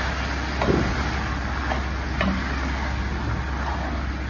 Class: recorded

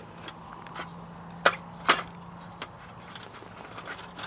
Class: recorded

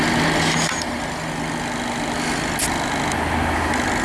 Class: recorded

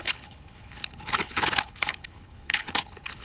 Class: remade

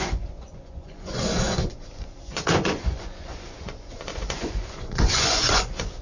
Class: remade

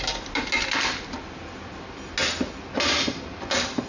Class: recorded